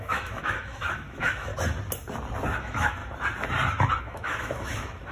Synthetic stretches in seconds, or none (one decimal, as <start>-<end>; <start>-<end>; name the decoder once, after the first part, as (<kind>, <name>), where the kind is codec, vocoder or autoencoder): 0.0-1.5 (autoencoder, DAC-VAE); 2.6-3.0; 4.0-5.1